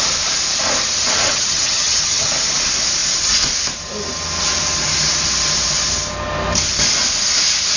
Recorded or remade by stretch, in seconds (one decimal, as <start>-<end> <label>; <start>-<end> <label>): 0.0-1.2 recorded; 1.2-2.3 remade; 2.3-7.8 recorded